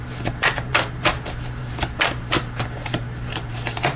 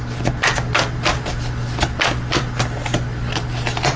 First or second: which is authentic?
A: second